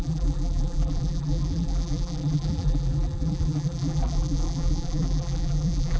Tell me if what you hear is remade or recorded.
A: remade